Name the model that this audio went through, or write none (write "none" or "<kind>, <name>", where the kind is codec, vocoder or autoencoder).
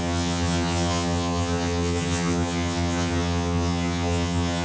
vocoder, HiFi-GAN